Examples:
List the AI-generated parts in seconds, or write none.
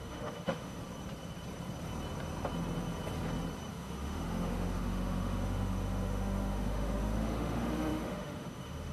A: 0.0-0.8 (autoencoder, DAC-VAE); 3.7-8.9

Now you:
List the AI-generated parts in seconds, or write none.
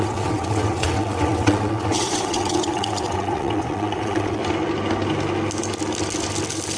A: 0.0-4.4 (vocoder, WaveNeXt)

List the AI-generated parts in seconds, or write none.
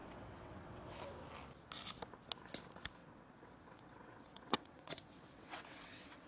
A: 0.0-1.0 (vocoder, WaveNeXt); 3.0-6.3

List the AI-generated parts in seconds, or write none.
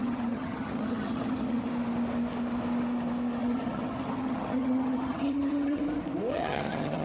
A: 0.0-1.7 (vocoder, HiFi-GAN); 3.4-5.8; 6.3-7.0